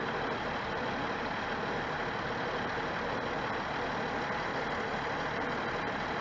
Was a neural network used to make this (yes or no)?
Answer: no